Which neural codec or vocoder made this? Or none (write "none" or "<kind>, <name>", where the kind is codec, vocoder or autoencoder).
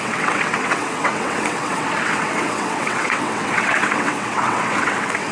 vocoder, WaveNeXt